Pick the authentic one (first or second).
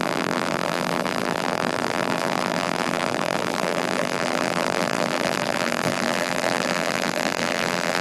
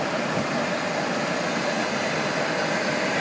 second